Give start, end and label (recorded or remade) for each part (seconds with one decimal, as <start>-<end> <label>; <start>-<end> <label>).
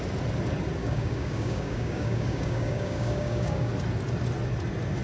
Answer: 0.0-0.8 recorded; 0.8-3.7 remade; 3.7-5.0 recorded